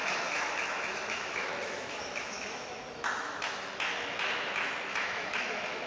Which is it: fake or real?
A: fake